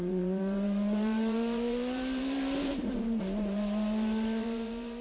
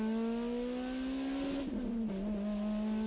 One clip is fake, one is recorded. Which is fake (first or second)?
first